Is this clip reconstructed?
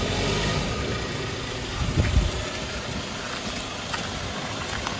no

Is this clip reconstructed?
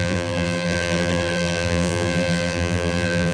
yes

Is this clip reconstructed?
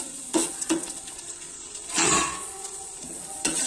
yes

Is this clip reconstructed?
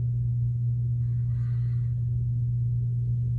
no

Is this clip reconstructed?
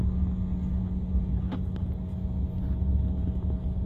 no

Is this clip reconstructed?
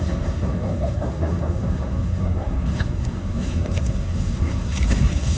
yes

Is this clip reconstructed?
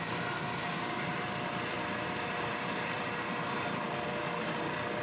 yes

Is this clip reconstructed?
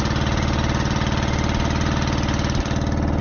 no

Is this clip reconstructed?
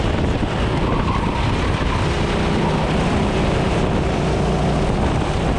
no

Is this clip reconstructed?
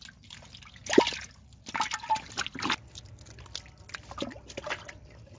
no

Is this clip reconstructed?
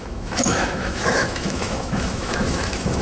yes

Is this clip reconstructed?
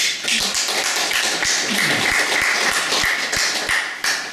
no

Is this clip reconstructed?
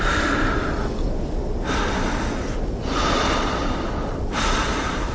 no